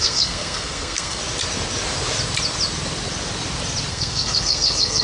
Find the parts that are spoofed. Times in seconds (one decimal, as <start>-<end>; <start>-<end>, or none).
0.0-1.2; 3.9-5.0